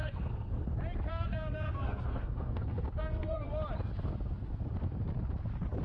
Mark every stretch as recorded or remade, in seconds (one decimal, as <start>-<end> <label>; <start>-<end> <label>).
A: 0.0-0.7 remade; 0.7-1.1 recorded; 1.1-3.5 remade; 3.5-5.8 recorded